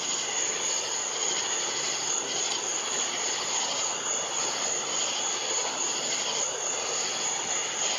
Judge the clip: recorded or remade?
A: recorded